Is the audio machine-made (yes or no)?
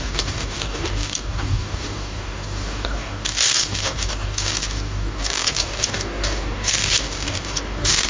yes